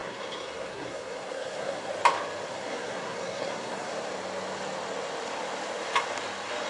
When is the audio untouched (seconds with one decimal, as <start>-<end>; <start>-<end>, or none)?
1.9-2.5; 3.9-6.7